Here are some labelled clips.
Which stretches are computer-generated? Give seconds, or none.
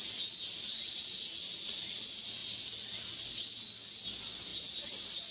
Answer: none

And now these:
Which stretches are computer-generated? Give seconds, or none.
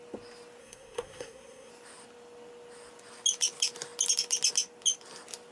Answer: 0.6-1.7 (codec, SNAC)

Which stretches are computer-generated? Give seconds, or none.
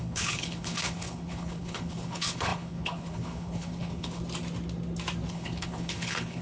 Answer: 0.0-4.2 (codec, HILCodec); 5.3-6.4